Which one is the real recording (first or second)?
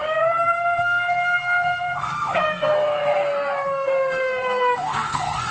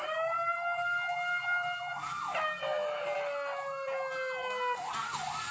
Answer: second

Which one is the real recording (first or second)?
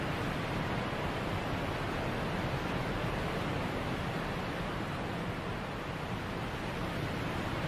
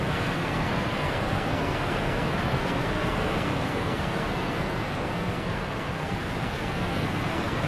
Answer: first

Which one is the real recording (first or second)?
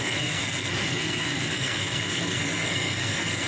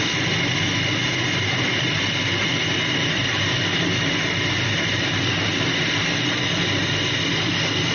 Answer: second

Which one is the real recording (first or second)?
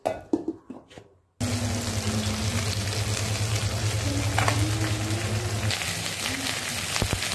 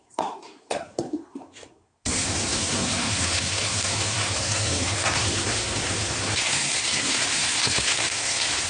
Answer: first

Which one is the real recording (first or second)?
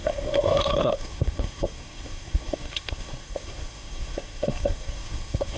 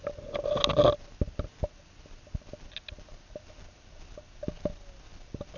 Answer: second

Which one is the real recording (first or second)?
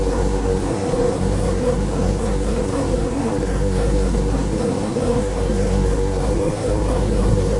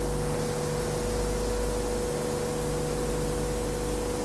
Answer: second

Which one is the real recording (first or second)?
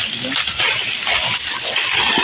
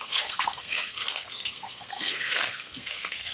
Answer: first